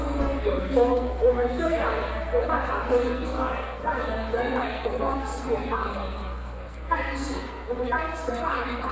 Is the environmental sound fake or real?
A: fake